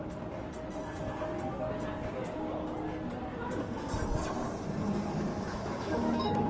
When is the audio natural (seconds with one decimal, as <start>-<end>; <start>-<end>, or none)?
0.0-5.3